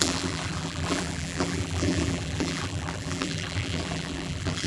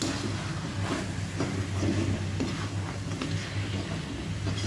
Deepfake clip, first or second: first